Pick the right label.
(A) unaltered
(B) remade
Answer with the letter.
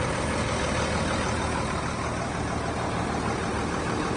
A